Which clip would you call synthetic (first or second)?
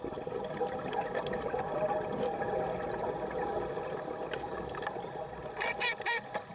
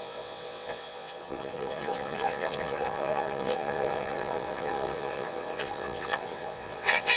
second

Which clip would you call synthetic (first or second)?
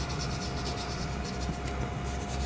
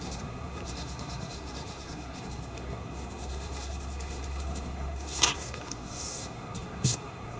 second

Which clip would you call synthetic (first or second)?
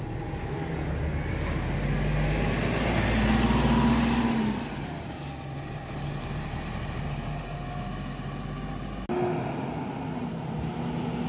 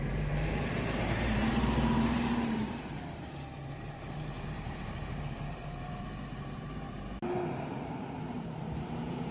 second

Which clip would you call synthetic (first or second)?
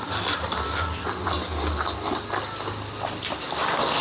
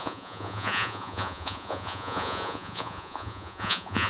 second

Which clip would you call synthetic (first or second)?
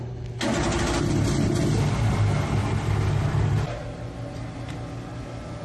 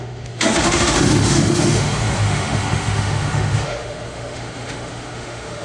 second